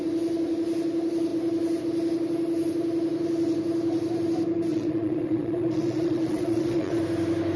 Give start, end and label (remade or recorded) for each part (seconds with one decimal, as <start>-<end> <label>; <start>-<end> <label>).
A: 0.0-4.7 recorded; 4.7-7.0 remade; 7.0-7.6 recorded